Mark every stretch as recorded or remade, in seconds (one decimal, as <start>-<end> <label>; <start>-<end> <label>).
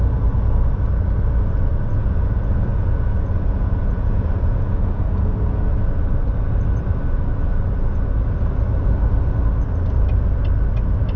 0.0-1.9 recorded; 1.9-5.6 remade; 5.6-11.2 recorded